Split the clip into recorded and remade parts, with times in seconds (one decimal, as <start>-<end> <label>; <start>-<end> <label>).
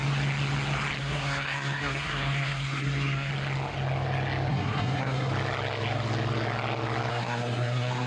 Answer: 0.0-1.0 recorded; 1.0-3.3 remade; 3.3-4.5 recorded; 4.5-5.3 remade; 5.3-7.1 recorded; 7.1-8.1 remade